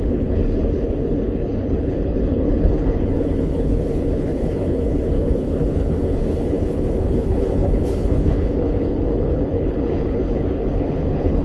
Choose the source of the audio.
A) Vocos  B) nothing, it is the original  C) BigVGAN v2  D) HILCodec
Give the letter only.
D